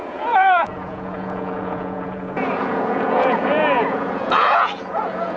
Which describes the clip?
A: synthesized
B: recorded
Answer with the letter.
A